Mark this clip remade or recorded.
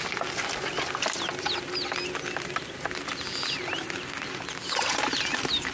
recorded